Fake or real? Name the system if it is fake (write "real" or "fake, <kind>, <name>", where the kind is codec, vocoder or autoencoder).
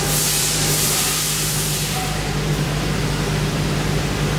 fake, vocoder, BigVGAN v2